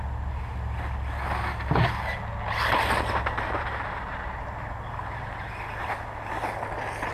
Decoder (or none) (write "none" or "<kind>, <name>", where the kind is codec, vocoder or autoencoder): none